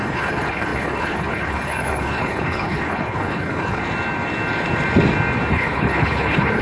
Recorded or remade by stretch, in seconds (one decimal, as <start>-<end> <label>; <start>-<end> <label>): 0.0-3.8 remade; 3.8-5.5 recorded; 5.5-6.6 remade